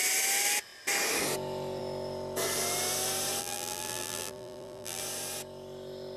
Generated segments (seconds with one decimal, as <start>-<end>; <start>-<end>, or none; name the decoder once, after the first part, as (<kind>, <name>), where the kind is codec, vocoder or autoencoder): 3.4-5.0 (vocoder, BigVGAN v2)